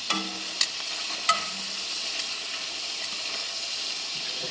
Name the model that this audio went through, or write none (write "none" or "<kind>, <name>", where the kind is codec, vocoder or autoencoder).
none